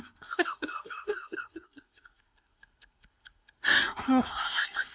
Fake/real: fake